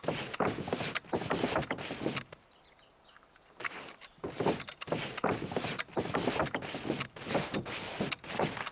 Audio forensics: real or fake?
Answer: real